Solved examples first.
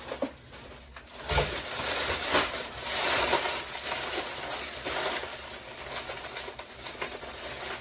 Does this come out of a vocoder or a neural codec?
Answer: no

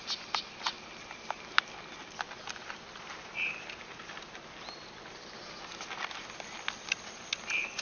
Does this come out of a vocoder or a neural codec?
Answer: no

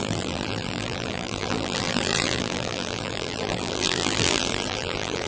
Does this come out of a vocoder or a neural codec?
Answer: yes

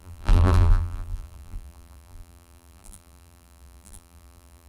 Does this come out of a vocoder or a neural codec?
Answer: yes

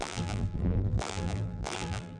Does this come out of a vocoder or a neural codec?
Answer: yes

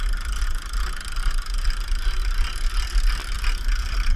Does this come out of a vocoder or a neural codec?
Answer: no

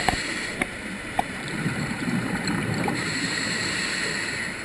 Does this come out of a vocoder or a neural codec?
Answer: yes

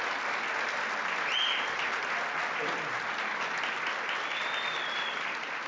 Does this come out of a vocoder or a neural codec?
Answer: no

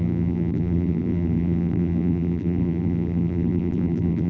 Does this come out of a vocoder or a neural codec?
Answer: yes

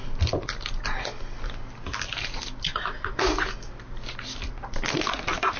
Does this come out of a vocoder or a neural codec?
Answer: no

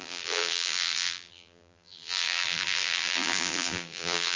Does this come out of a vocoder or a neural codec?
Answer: yes